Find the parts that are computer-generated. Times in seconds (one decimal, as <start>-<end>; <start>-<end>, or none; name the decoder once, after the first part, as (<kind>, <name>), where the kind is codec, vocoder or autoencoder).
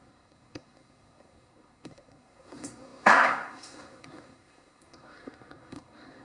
0.0-6.2 (codec, SNAC)